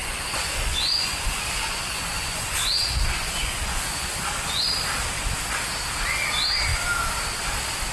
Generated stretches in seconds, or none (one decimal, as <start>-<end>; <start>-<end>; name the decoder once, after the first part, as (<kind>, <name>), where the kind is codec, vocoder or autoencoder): 0.0-4.7 (vocoder, Vocos)